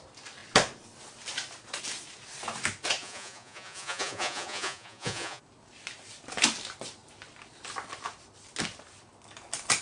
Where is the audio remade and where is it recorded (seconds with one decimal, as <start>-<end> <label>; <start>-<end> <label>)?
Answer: 0.0-3.0 recorded; 3.0-5.4 remade; 5.4-9.8 recorded